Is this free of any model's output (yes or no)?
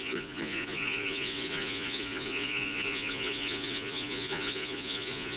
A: no